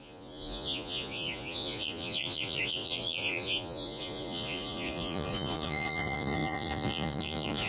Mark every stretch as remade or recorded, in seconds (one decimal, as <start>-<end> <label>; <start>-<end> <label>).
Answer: 0.0-7.7 remade